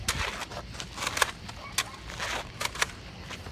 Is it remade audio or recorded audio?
recorded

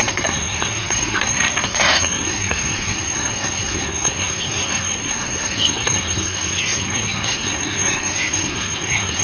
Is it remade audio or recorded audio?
remade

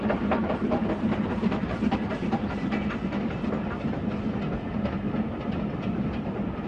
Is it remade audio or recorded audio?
recorded